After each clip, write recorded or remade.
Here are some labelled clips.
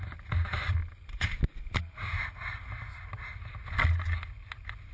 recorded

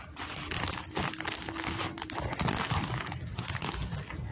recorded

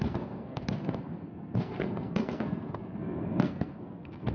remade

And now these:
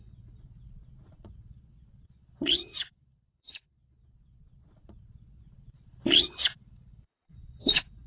remade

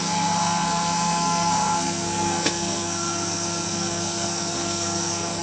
remade